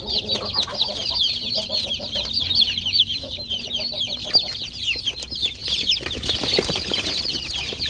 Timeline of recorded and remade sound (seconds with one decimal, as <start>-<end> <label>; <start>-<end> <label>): 0.0-2.4 recorded; 2.4-3.7 remade; 3.7-5.6 recorded; 5.6-7.9 remade